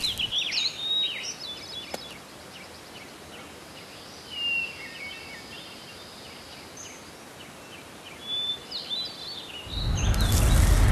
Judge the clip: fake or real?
real